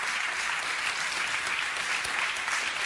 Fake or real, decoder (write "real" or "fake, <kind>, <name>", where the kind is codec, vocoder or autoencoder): real